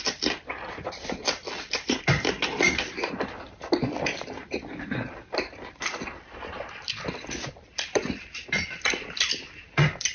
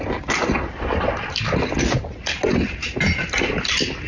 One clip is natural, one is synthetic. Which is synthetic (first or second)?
first